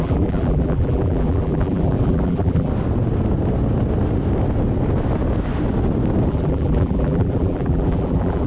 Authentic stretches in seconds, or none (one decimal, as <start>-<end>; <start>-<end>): 2.7-6.3

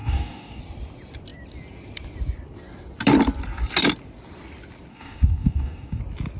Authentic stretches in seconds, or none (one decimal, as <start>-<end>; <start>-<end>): 0.6-4.9; 6.0-6.4